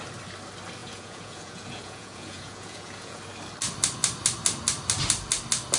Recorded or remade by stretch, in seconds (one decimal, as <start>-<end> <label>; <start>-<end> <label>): 0.0-0.8 recorded; 0.8-3.2 remade; 3.2-5.8 recorded